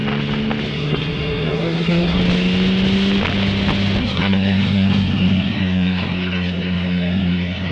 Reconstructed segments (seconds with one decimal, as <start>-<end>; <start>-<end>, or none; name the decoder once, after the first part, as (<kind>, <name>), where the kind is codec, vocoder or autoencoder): 0.7-2.2 (codec, SNAC); 4.0-7.7